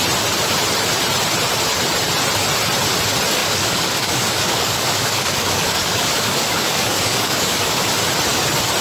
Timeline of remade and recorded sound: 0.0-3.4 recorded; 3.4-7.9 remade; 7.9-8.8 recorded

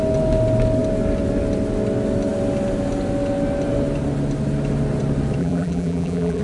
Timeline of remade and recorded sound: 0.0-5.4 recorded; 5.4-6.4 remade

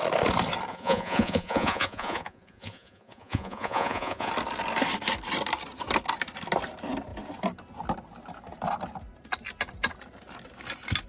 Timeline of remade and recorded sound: 0.0-0.7 recorded; 0.7-4.3 remade; 4.3-11.1 recorded